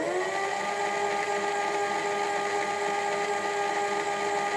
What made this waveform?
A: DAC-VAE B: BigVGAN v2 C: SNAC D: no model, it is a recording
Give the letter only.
D